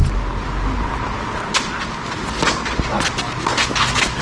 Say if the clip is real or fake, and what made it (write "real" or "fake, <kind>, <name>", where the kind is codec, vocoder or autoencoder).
real